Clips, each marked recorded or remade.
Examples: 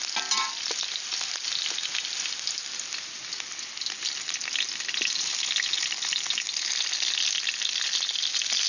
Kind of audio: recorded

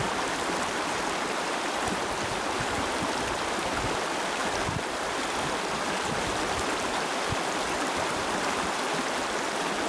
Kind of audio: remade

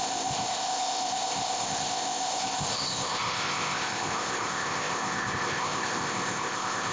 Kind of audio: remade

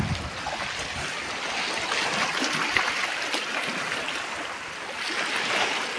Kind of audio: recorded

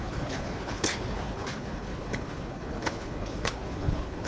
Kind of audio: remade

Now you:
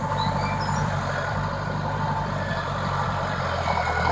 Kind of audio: remade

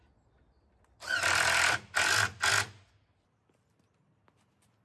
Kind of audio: recorded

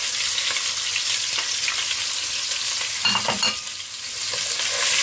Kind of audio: recorded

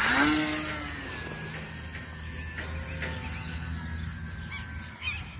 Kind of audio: recorded